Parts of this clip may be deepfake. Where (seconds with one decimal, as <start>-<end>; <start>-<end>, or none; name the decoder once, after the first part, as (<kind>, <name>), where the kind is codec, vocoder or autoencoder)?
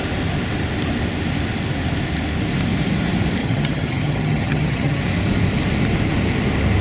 3.4-5.0 (vocoder, HiFi-GAN)